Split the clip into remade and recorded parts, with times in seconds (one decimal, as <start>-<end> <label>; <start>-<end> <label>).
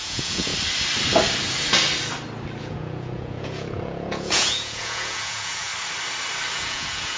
0.0-0.5 remade; 0.5-2.6 recorded; 2.6-5.7 remade; 5.7-6.5 recorded; 6.5-7.2 remade